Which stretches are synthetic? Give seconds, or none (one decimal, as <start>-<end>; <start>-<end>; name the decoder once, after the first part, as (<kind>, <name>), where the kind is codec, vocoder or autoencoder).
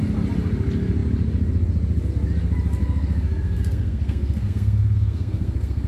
2.8-5.9 (codec, SNAC)